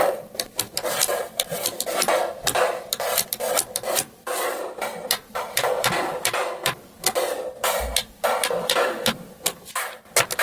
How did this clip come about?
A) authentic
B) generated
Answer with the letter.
B